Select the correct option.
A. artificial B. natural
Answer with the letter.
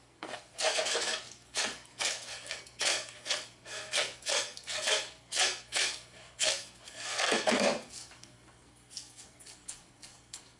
A